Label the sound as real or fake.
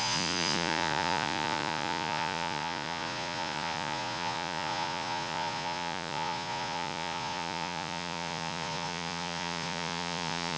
fake